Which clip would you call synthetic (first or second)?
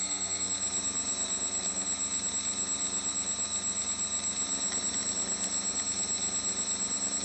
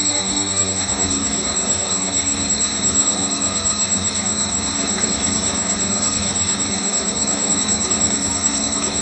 second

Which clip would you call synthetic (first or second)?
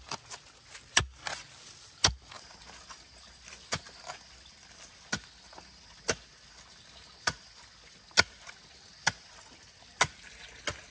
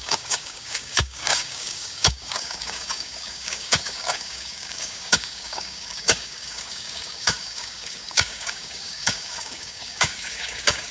second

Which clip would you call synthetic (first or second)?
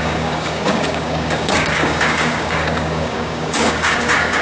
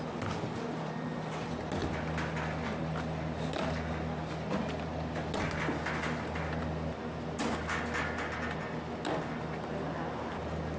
first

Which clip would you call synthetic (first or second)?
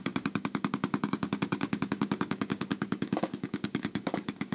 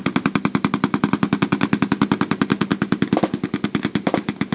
first